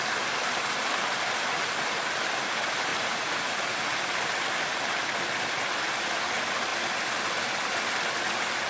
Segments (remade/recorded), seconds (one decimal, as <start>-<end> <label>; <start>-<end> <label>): 0.0-2.9 recorded; 2.9-4.0 remade; 4.0-8.7 recorded